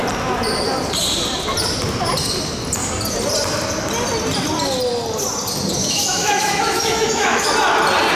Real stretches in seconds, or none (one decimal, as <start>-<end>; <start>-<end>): 0.0-5.8; 7.5-8.1